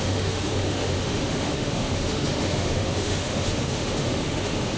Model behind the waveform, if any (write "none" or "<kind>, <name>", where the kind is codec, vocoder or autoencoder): autoencoder, DAC-VAE